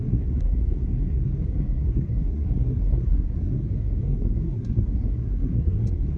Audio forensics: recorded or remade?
remade